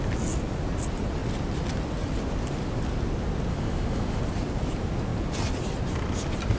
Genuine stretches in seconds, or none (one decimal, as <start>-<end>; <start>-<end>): 0.0-3.5; 4.2-6.6